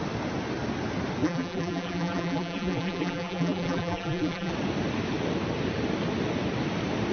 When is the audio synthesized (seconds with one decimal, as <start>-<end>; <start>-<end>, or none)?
1.2-4.5